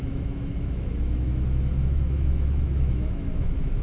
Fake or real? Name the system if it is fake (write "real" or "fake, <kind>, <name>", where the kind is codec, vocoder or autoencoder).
fake, autoencoder, DAC-VAE